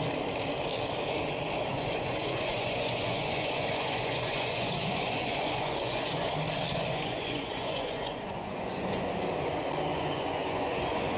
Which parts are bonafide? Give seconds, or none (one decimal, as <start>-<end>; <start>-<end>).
0.0-1.7; 6.3-6.7; 9.1-9.9